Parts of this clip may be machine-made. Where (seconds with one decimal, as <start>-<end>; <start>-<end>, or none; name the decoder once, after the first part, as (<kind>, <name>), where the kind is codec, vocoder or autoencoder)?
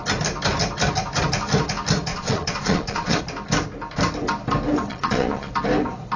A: 2.1-3.2 (vocoder, Vocos); 4.9-5.5